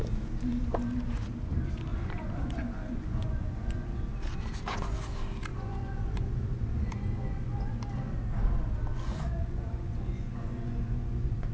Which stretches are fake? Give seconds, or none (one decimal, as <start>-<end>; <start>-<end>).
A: 1.9-4.0; 5.5-7.7; 8.9-11.5